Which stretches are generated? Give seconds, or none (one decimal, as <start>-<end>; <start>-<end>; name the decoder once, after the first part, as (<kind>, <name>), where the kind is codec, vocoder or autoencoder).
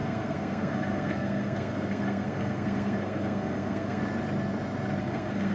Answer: 0.0-4.0 (codec, SNAC); 5.0-5.5